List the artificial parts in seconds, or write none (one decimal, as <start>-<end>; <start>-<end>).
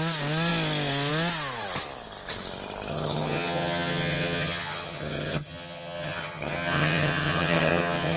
2.9-8.2